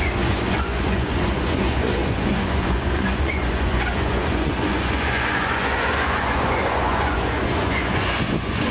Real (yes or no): no